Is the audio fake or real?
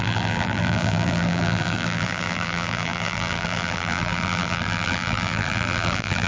fake